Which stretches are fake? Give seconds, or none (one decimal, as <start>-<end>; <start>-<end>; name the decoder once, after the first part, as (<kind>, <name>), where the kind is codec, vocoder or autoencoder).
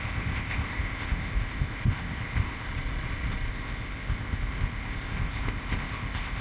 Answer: 0.0-2.7 (codec, ZipCodec); 3.5-6.4